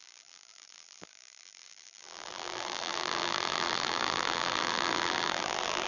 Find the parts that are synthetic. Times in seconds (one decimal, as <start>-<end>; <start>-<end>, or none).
0.0-5.9